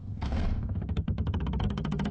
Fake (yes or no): yes